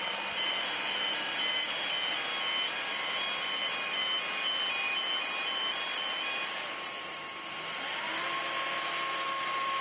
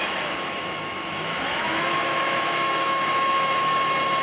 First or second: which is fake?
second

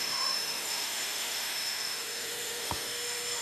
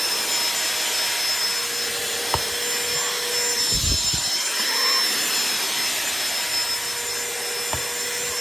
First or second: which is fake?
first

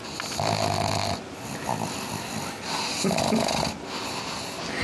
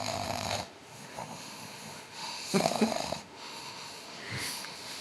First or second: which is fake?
second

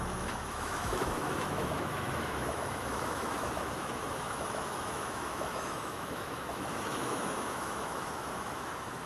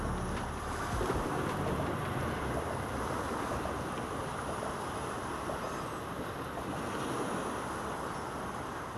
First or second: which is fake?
first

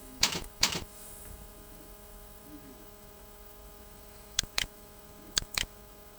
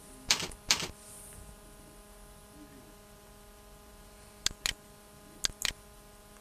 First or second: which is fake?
first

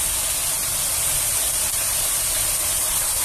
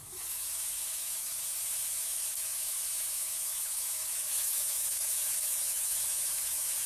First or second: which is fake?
second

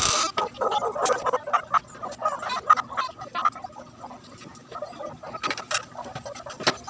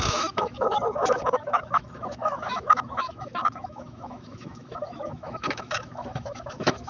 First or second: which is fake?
second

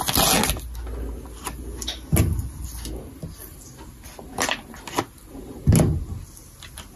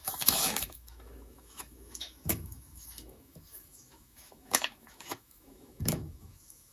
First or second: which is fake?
second